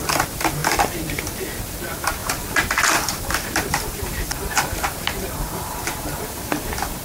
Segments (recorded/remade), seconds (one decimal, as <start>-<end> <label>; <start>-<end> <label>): 0.0-0.6 recorded; 0.6-1.2 remade; 1.2-2.2 recorded; 2.2-6.4 remade; 6.4-7.0 recorded